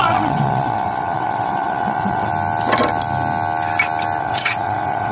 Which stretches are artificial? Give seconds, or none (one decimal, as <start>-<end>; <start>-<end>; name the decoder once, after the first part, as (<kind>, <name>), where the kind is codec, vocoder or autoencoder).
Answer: 0.0-2.3 (vocoder, WaveNeXt); 4.2-5.1